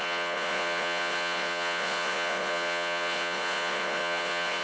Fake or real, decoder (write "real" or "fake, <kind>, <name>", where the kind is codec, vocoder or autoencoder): fake, vocoder, Vocos